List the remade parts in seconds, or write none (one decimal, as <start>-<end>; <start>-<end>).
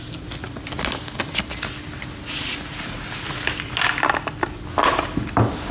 none